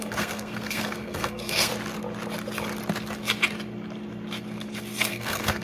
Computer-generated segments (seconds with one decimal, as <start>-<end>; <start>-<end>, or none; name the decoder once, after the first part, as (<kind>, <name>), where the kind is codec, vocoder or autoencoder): 0.0-1.7 (codec, SNAC); 5.1-5.6